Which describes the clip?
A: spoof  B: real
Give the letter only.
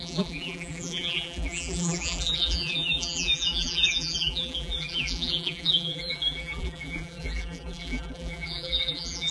A